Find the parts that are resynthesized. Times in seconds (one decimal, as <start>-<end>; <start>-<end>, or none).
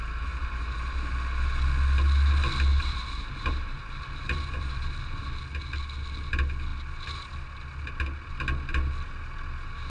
0.4-0.9; 2.7-5.3